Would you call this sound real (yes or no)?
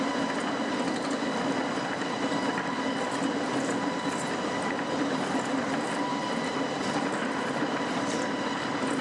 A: yes